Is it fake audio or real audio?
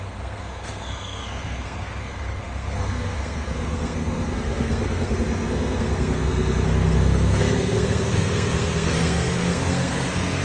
fake